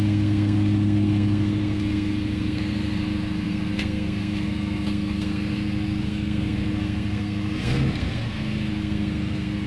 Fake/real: fake